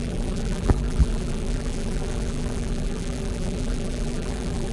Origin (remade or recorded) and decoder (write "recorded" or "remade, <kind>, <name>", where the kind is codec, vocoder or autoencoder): remade, vocoder, BigVGAN v2